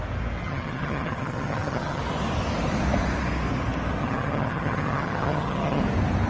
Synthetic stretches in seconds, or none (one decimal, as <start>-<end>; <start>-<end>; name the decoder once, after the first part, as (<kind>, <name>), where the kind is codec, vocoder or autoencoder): 0.4-2.0 (vocoder, HiFi-GAN); 4.0-5.8